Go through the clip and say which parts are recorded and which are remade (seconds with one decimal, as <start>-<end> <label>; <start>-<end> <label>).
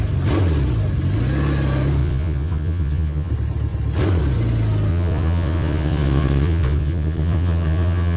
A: 0.0-2.0 recorded; 2.0-3.3 remade; 3.3-4.9 recorded; 4.9-8.2 remade